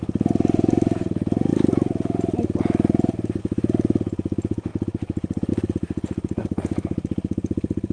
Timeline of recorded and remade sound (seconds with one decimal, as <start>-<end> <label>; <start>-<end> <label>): 0.0-6.4 recorded; 6.4-6.9 remade; 6.9-7.9 recorded